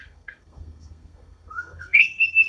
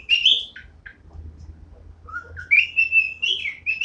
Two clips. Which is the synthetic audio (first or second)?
first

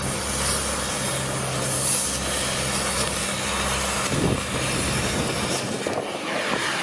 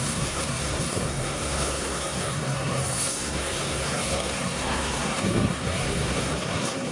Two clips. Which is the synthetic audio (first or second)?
second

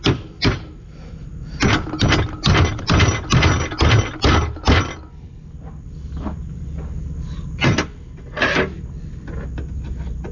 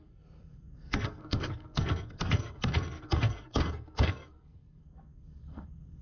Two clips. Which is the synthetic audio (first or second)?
second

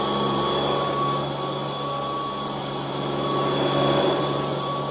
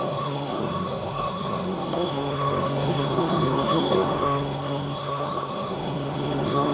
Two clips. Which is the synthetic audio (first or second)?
second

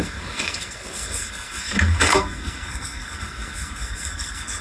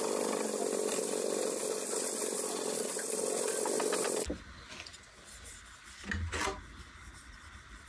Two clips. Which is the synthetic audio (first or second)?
first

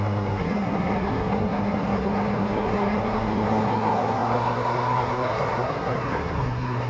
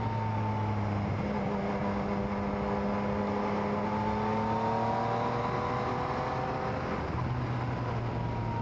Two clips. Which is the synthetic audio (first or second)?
first